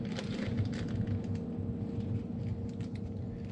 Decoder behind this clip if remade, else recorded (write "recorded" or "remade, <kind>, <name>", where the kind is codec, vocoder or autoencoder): recorded